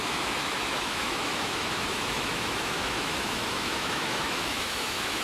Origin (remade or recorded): remade